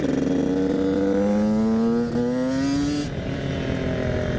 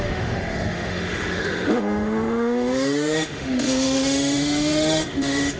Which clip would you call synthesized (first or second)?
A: second